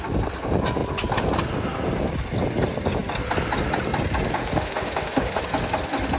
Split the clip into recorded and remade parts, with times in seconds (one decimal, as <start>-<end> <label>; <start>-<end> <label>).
0.0-4.4 recorded; 4.4-5.4 remade; 5.4-6.2 recorded